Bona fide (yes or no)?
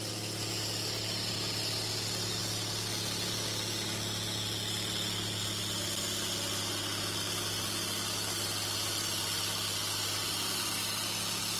yes